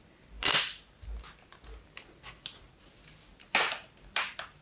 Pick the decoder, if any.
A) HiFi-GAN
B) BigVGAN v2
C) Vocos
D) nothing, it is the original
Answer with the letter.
D